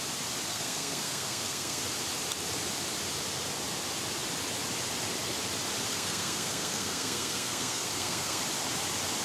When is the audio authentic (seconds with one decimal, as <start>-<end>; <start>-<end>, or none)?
0.0-0.5; 1.8-5.9; 8.4-9.2